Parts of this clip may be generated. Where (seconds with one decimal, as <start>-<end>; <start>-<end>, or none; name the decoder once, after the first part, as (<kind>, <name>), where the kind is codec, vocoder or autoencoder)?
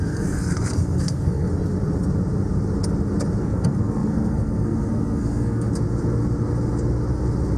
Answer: 0.0-1.5 (codec, SNAC); 3.4-5.7